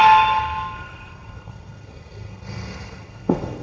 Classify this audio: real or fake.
fake